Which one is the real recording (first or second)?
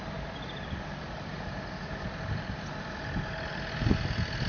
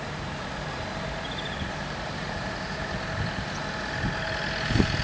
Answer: second